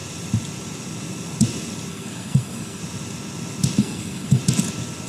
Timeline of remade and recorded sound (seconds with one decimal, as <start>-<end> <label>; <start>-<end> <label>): 0.0-1.9 recorded; 1.9-2.8 remade; 2.8-3.8 recorded; 3.8-4.4 remade; 4.4-5.1 recorded